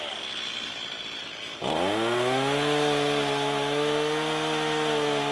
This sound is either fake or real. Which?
real